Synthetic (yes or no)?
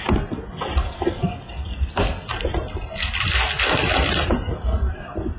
yes